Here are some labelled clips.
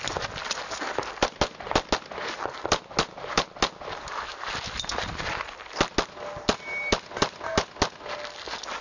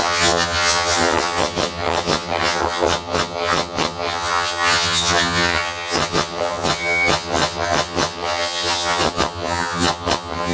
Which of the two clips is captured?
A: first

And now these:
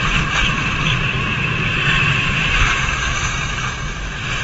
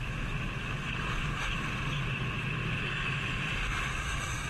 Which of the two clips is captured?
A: second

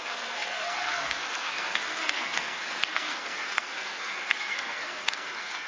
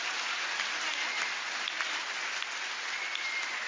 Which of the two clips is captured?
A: second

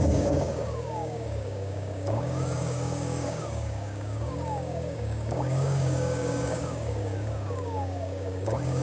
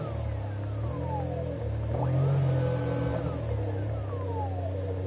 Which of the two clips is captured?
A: second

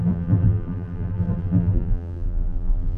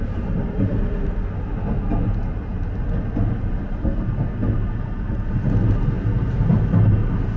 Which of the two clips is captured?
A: second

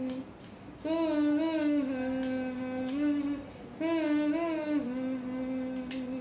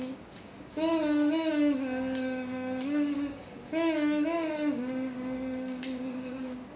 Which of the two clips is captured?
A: first